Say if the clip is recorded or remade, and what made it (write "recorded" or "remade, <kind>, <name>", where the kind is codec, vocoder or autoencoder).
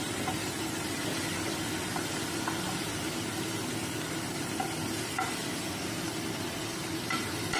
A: recorded